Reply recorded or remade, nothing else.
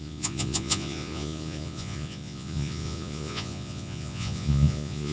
remade